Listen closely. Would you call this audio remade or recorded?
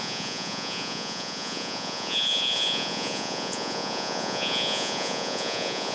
remade